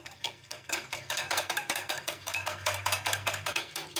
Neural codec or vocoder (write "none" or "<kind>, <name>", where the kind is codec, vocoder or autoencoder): codec, SNAC